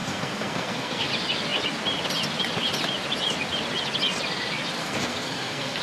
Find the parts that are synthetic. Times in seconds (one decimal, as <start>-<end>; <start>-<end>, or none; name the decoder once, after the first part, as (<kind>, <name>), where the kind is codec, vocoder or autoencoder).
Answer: 0.0-1.1 (codec, SNAC); 4.8-5.8